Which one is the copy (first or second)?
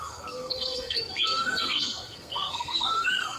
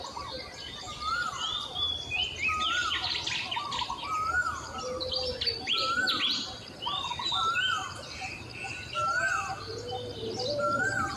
first